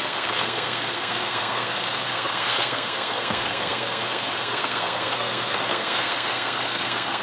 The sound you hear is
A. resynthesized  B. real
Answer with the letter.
A